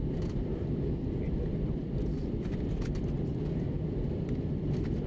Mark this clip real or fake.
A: fake